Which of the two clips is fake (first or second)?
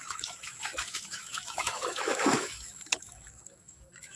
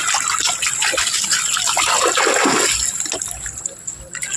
first